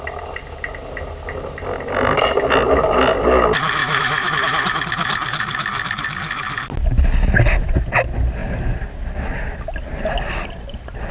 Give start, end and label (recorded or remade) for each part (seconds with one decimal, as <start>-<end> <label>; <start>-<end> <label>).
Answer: 0.0-3.8 recorded; 3.8-4.3 remade; 4.3-11.1 recorded